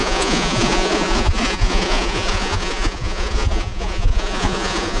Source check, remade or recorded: remade